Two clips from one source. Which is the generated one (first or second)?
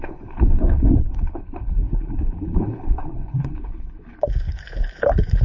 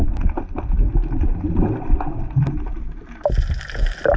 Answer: first